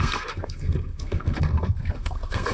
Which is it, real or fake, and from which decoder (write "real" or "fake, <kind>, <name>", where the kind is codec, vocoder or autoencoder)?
fake, codec, SNAC